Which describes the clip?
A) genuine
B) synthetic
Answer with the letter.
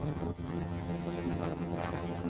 B